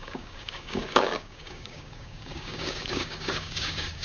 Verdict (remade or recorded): remade